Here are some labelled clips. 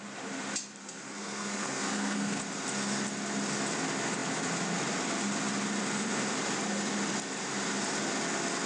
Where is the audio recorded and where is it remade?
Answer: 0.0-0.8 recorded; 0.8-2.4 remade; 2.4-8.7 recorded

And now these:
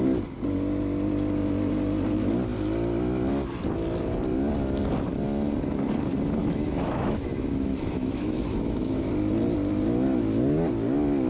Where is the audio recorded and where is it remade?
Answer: 0.0-6.4 recorded; 6.4-9.1 remade; 9.1-11.3 recorded

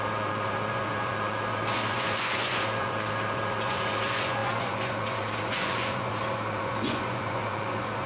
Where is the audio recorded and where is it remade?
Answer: 0.0-8.1 remade

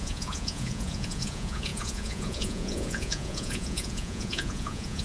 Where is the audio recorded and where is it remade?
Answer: 0.0-5.0 remade

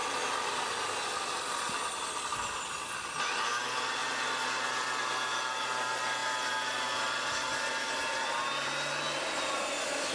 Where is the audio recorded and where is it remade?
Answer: 0.0-10.1 recorded